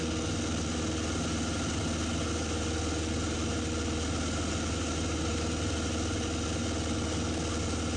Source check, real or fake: real